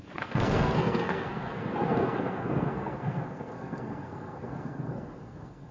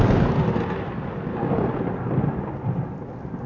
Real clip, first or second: second